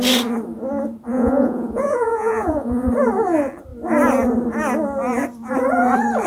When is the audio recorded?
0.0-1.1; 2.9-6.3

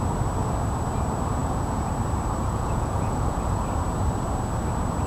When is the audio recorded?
0.0-1.4; 1.9-2.4; 3.6-5.1

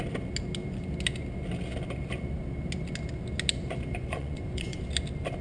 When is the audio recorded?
0.0-3.9; 4.8-5.4

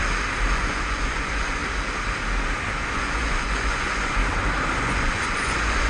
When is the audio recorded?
0.0-0.5; 1.6-2.9; 4.2-4.8

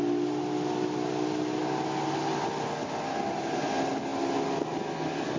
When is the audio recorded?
0.0-5.4